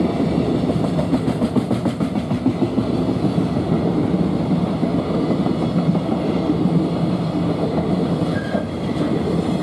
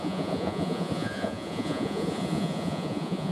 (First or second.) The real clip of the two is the first